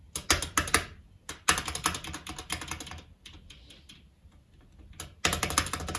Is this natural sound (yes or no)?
yes